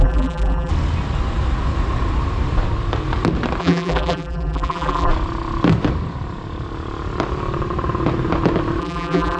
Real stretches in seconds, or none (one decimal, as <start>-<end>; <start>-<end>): 0.7-3.6; 5.1-8.8